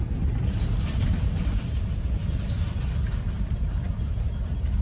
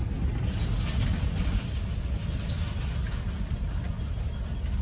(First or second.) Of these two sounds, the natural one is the second